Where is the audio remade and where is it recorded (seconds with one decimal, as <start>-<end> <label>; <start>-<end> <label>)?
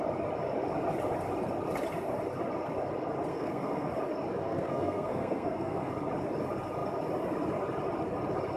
0.0-3.3 recorded; 3.3-3.9 remade; 3.9-4.4 recorded; 4.4-5.9 remade; 5.9-8.6 recorded